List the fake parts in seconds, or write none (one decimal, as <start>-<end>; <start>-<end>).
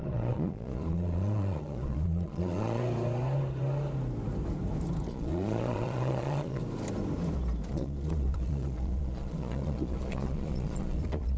0.0-2.8; 5.1-6.6; 7.7-11.4